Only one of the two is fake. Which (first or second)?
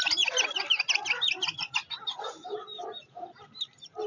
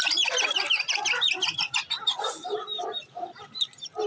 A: second